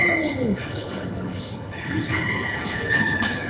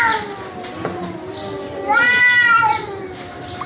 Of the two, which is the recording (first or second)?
second